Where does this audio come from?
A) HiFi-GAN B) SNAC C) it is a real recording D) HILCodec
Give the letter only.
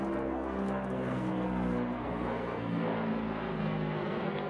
B